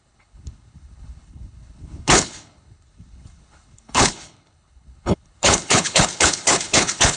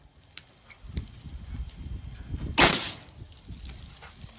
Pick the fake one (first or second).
first